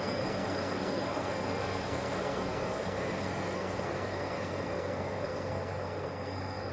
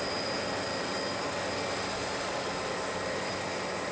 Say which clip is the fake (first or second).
first